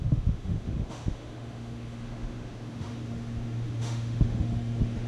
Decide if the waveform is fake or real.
fake